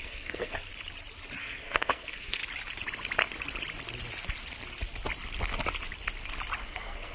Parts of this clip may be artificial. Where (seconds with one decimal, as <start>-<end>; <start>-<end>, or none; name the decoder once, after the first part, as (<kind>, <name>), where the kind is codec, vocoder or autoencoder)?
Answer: 0.0-0.7 (codec, SNAC); 1.4-2.4; 6.6-7.1